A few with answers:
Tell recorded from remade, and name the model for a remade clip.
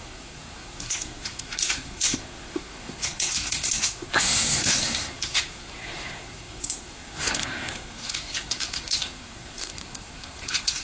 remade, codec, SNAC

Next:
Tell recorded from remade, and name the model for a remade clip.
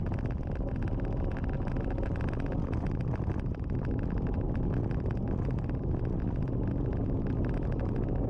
recorded